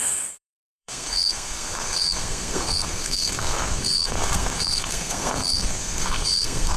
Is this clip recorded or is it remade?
remade